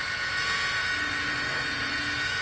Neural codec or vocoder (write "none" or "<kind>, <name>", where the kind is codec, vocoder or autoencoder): vocoder, Vocos